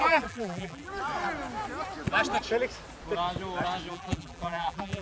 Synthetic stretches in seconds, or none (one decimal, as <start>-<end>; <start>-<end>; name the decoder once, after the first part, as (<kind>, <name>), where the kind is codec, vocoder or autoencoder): 0.0-0.9 (vocoder, BigVGAN v2); 3.9-5.0